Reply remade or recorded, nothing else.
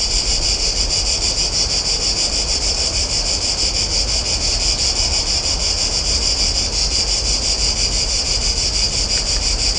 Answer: recorded